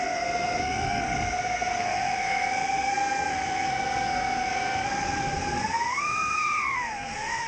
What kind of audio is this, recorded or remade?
remade